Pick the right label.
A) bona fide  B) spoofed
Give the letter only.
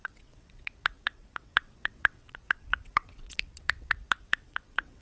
B